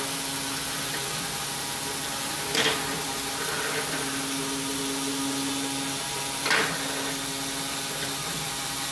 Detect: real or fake real